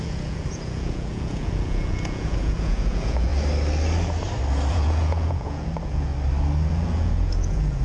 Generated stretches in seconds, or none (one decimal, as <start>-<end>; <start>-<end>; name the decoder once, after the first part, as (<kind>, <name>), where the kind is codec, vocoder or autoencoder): 0.0-3.3 (vocoder, Vocos); 4.7-6.1; 6.7-7.8